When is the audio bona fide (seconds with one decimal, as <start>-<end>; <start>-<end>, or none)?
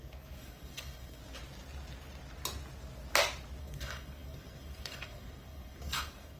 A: 1.2-3.6